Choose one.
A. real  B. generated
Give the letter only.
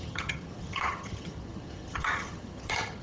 B